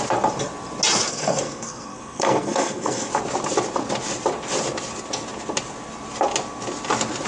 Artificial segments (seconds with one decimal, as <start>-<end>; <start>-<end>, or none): 1.1-3.1

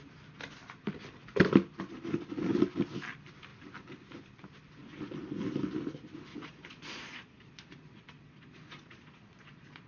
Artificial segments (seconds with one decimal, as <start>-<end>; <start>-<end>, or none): 6.3-9.9